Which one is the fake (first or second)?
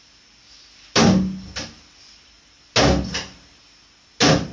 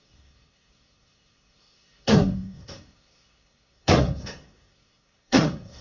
second